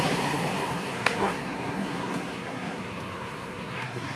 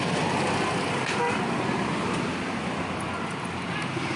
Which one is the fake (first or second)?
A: first